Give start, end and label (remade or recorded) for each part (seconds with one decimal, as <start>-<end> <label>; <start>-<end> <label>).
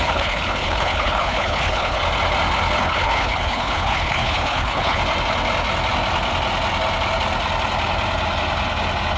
0.0-2.0 remade; 2.0-2.8 recorded; 2.8-5.0 remade; 5.0-9.2 recorded